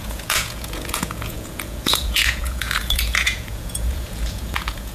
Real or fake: fake